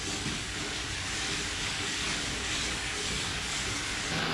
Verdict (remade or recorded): remade